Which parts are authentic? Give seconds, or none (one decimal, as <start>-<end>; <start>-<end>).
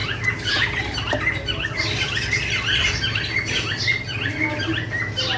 0.0-5.4